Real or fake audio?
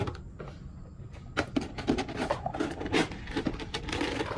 real